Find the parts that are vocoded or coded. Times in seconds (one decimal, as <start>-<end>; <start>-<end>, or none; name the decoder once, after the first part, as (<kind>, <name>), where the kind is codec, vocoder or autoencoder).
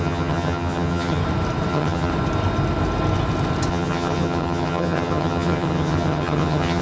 0.0-1.2 (vocoder, HiFi-GAN); 1.7-2.1; 3.7-6.8